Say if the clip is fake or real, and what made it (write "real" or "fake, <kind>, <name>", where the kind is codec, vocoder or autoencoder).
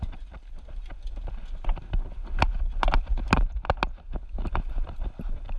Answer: real